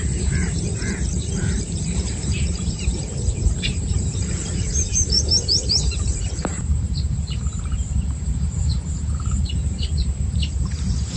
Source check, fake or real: fake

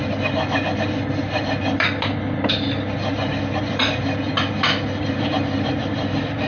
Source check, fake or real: fake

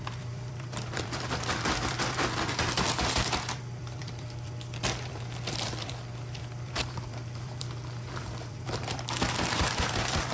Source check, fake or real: fake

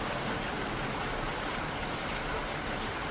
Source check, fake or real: fake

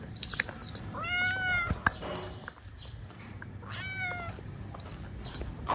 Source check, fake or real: real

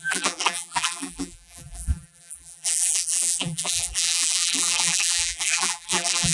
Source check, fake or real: fake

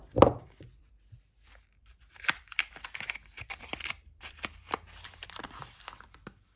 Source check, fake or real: fake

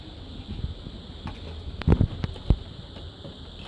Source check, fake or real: real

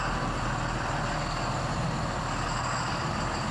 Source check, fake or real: real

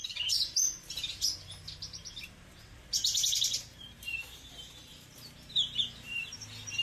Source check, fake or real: fake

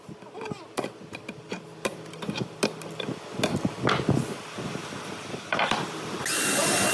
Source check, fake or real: real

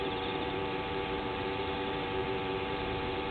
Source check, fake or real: fake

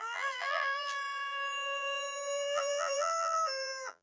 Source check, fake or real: fake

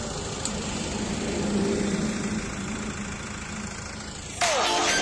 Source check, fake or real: real